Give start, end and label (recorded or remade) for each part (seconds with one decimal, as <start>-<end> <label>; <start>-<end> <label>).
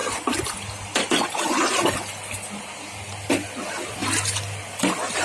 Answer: 0.0-5.2 recorded